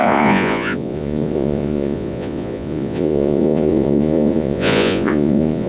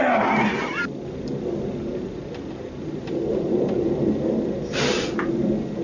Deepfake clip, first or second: first